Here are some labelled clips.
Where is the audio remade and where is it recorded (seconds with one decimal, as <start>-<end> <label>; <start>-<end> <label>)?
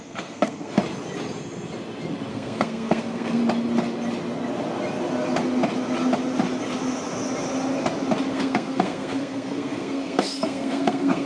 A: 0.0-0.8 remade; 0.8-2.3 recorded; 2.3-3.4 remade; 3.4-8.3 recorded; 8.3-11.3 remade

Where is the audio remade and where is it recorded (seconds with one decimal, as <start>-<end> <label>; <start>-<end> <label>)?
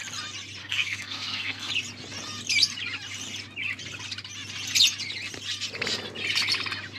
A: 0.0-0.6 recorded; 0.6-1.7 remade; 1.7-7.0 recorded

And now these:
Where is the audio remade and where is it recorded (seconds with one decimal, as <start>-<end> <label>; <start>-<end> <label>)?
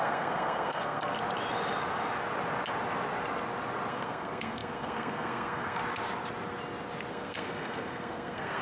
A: 0.0-1.1 remade; 1.1-3.9 recorded; 3.9-5.8 remade; 5.8-7.1 recorded; 7.1-8.6 remade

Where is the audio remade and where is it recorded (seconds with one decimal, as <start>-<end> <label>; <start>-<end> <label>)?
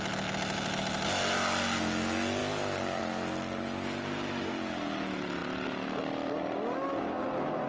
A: 0.0-7.7 recorded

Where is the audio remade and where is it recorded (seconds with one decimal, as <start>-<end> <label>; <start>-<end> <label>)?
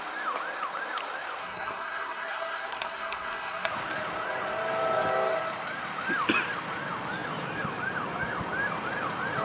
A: 0.0-1.4 recorded; 1.4-3.7 remade; 3.7-9.4 recorded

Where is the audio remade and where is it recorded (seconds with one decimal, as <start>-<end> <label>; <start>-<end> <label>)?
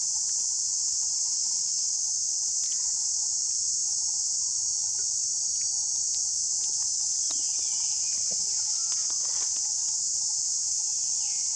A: 0.0-11.6 recorded